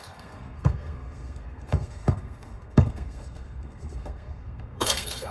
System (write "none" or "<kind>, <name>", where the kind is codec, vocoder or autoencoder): codec, SNAC